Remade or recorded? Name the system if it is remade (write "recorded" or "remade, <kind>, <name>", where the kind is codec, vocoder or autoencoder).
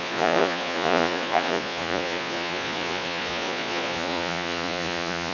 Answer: remade, vocoder, Vocos